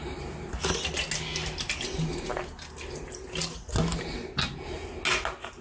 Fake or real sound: real